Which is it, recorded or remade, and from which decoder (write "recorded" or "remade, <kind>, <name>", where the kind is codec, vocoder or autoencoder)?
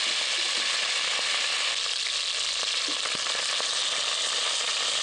recorded